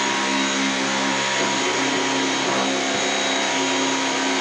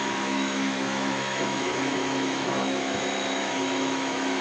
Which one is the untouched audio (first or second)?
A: first